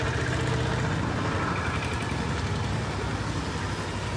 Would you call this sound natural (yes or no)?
yes